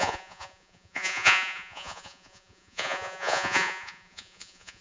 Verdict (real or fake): fake